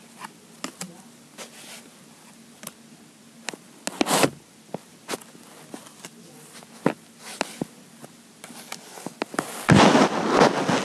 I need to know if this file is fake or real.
real